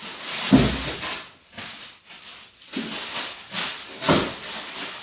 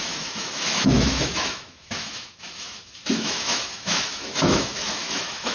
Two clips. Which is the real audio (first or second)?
first